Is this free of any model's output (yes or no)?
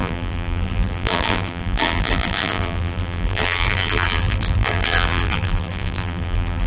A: no